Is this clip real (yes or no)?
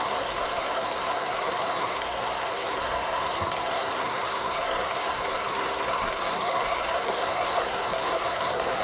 no